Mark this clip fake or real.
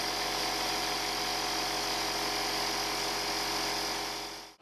real